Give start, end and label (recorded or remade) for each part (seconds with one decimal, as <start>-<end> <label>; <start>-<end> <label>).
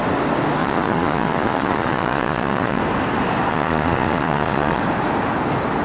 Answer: 0.0-0.6 recorded; 0.6-2.8 remade; 2.8-3.5 recorded; 3.5-4.8 remade; 4.8-5.8 recorded